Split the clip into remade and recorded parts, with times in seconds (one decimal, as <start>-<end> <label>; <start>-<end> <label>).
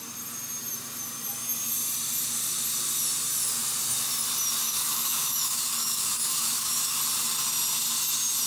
0.0-4.6 recorded; 4.6-7.0 remade; 7.0-8.5 recorded